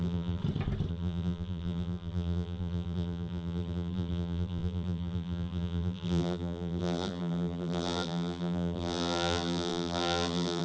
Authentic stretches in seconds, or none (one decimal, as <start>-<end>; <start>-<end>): 0.4-0.9